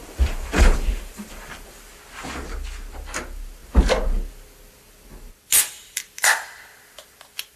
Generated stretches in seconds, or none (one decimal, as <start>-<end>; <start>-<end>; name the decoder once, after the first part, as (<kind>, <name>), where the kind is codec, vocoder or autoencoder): 0.0-1.9 (vocoder, BigVGAN v2)

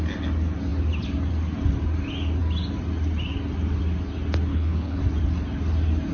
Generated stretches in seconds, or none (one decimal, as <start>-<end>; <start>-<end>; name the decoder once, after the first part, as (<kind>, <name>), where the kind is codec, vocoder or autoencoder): 4.5-5.0 (codec, HILCodec)

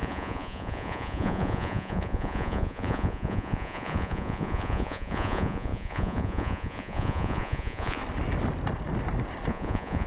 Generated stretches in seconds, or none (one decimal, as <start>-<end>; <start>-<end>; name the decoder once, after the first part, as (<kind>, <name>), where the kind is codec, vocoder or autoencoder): 0.0-8.0 (vocoder, Vocos); 9.5-10.1

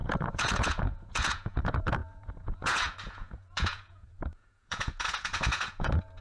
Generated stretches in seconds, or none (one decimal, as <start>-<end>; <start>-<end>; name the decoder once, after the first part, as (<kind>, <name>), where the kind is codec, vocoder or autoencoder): 0.0-6.2 (vocoder, Vocos)

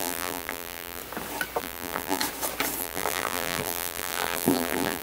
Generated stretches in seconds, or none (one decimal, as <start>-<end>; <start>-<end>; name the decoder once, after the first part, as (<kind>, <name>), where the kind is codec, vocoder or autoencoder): 0.0-1.0 (vocoder, BigVGAN v2); 1.6-2.2; 2.8-5.0

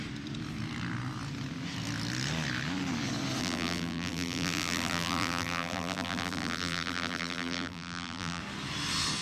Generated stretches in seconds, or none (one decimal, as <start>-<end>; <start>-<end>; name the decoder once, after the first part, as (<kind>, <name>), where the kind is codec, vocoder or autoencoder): 3.4-8.4 (vocoder, BigVGAN v2)